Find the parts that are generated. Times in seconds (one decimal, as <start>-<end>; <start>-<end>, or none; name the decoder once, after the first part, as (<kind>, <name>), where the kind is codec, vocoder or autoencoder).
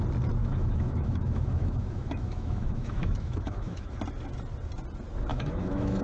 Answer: 0.4-4.0 (autoencoder, DAC-VAE); 5.3-6.0